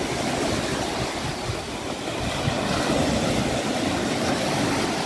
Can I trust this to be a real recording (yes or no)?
yes